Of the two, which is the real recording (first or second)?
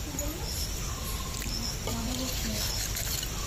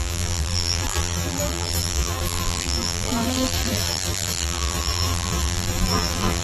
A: first